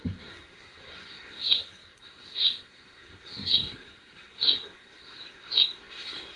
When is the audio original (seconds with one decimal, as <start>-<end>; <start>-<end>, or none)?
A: none